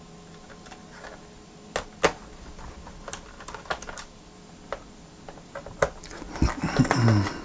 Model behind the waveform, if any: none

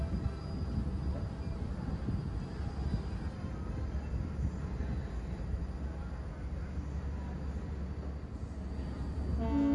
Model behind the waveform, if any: none